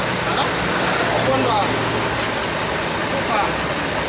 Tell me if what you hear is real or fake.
real